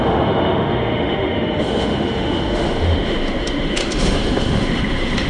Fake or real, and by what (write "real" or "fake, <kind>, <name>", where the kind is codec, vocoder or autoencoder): fake, autoencoder, DAC-VAE